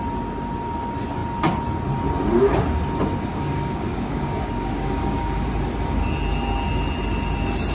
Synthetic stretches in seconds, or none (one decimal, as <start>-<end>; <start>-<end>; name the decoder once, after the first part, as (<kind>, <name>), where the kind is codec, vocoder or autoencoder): 3.3-5.5 (codec, DAC)